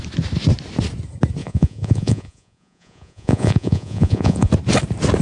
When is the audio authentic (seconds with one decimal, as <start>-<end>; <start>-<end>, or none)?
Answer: 0.0-1.4; 4.5-5.2